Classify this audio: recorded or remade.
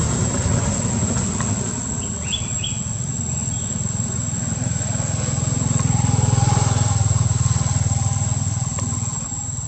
recorded